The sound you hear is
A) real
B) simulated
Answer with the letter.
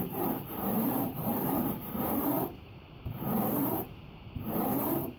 B